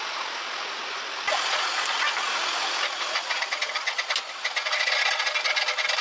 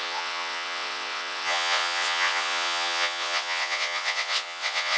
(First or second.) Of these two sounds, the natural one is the first